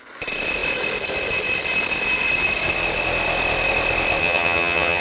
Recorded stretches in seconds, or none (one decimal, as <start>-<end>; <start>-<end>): 0.0-4.2